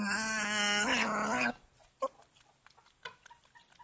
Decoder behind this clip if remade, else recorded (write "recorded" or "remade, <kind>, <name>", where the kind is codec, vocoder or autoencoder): recorded